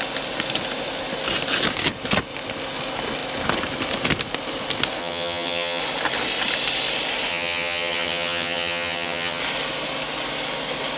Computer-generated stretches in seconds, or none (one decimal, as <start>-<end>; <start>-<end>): 5.0-5.8; 7.3-9.4